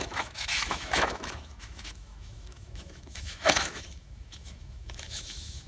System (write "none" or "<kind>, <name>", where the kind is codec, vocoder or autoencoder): autoencoder, DAC-VAE